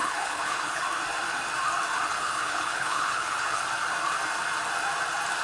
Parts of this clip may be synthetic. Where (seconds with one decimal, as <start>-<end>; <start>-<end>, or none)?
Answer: 0.0-0.8; 2.1-3.6